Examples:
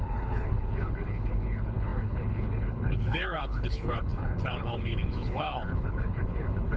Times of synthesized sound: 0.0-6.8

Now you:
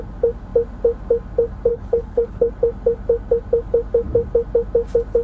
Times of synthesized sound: 1.7-2.5

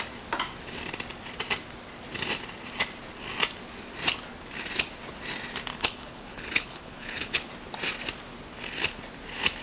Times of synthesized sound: 5.7-7.5

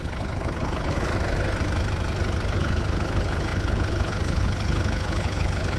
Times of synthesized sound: 0.0-1.1; 2.5-5.8

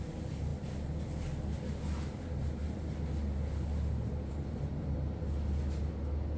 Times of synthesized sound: none

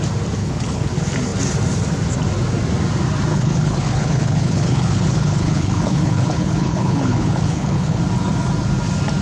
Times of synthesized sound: 0.4-0.9; 3.3-8.0

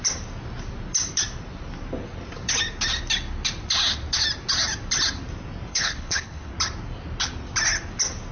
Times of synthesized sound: 5.7-6.5